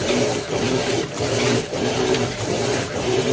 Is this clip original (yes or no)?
no